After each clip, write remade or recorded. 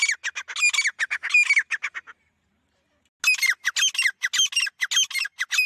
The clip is recorded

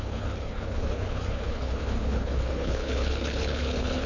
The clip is remade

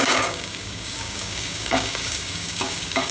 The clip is remade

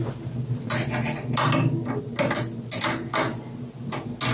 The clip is recorded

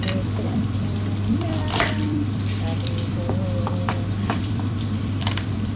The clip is remade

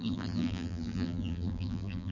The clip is remade